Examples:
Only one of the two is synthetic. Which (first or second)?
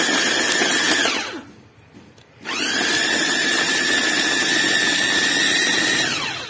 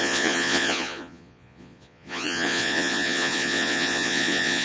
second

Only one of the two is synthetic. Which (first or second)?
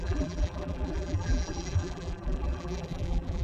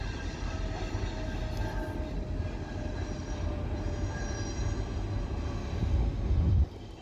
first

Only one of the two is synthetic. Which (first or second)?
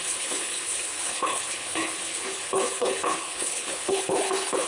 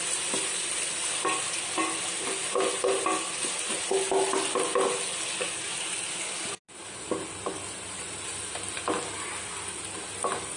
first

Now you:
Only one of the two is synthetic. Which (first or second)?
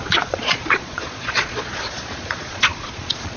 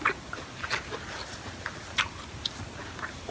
first